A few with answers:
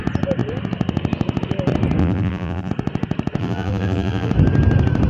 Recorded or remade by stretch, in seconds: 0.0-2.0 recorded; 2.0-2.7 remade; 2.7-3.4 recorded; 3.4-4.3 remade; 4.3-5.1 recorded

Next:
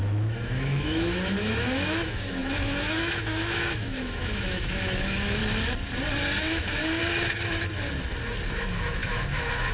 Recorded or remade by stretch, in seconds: 0.0-5.4 remade; 5.4-6.4 recorded; 6.4-7.0 remade; 7.0-8.5 recorded; 8.5-9.7 remade

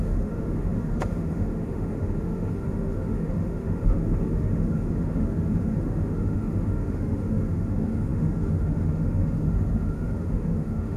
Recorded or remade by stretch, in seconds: 0.0-11.0 remade

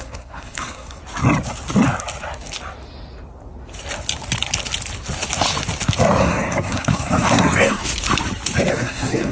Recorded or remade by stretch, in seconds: 0.0-1.0 remade; 1.0-6.2 recorded; 6.2-7.8 remade; 7.8-8.7 recorded; 8.7-9.3 remade

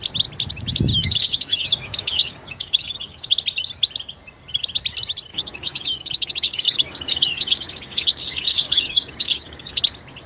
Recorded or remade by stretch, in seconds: 0.0-0.9 recorded; 0.9-3.3 remade; 3.3-5.3 recorded; 5.3-9.8 remade; 9.8-10.3 recorded